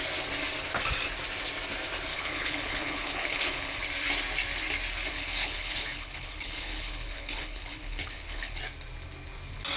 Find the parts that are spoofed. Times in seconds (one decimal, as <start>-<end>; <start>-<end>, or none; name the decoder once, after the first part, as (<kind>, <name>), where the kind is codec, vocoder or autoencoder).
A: 2.1-3.8 (codec, HILCodec); 5.1-8.6